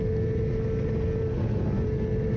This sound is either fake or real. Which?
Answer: real